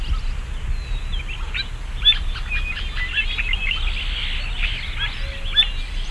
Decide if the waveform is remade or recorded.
recorded